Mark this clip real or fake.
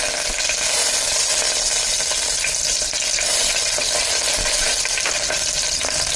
real